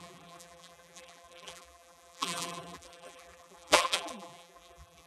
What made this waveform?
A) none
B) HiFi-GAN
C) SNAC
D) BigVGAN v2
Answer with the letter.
D